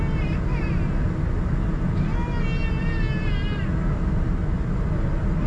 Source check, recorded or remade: recorded